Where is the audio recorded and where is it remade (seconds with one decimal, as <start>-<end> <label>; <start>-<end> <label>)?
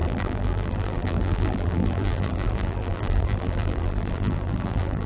0.0-5.1 remade